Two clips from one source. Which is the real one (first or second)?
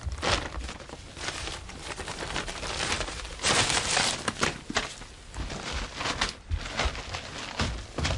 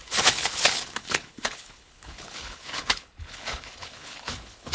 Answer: first